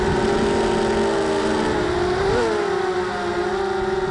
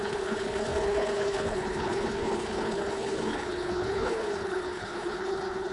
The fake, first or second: second